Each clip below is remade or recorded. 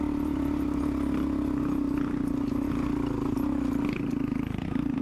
recorded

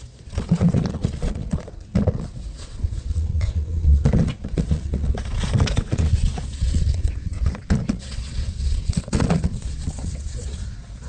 remade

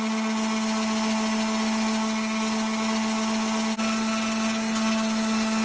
recorded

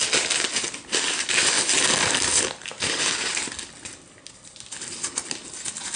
recorded